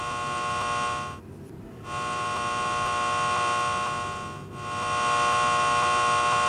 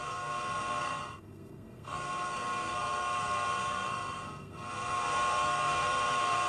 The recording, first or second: first